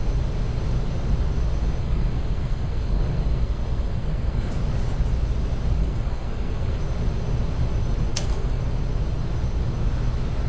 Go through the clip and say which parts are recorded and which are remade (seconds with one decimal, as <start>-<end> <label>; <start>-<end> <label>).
0.0-1.8 recorded; 1.8-4.5 remade; 4.5-5.8 recorded; 5.8-6.8 remade; 6.8-8.1 recorded; 8.1-8.6 remade; 8.6-10.5 recorded